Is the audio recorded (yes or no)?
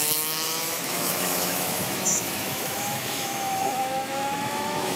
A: no